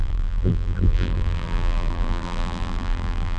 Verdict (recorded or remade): remade